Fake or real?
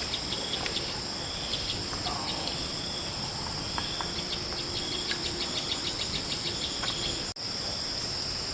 real